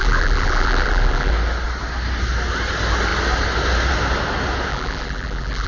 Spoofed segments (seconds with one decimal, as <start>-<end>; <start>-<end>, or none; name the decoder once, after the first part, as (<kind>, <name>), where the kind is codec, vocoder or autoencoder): 0.0-1.3 (vocoder, BigVGAN v2); 4.7-5.7